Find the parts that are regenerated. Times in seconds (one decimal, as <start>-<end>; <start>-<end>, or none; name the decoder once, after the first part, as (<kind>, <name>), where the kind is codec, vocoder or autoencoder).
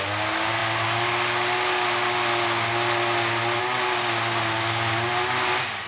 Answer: none